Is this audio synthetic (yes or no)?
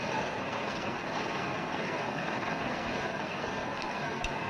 yes